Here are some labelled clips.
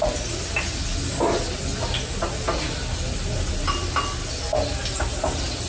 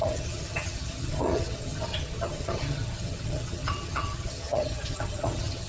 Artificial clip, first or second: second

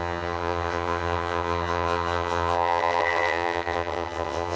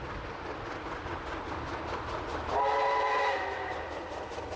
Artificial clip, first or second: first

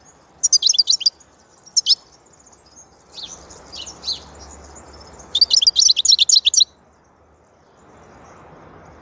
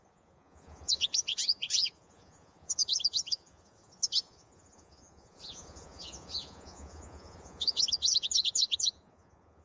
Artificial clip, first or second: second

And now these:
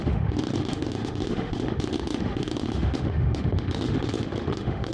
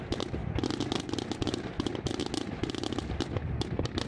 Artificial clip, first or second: first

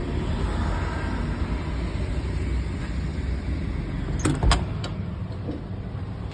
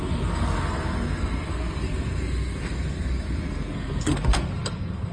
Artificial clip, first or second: second